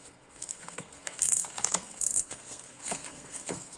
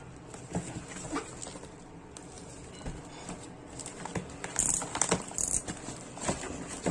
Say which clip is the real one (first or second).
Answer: second